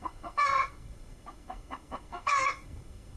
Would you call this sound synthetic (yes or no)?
yes